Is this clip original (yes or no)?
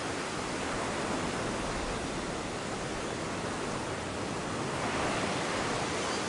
yes